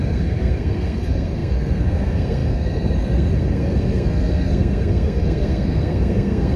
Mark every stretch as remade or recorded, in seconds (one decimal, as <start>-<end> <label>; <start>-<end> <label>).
0.0-6.6 remade